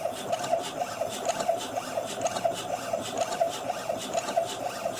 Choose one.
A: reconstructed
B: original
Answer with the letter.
B